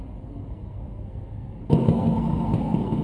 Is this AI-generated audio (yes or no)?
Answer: yes